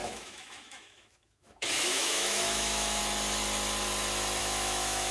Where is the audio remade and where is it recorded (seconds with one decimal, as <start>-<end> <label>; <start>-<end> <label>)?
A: 0.0-3.0 remade; 3.0-4.4 recorded; 4.4-5.1 remade